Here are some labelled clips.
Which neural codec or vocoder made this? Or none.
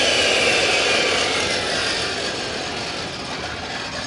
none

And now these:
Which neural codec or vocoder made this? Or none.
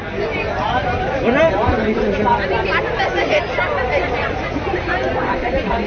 none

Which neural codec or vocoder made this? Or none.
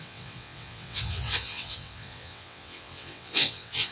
vocoder, WaveNeXt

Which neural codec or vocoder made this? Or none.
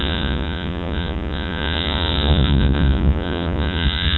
vocoder, Vocos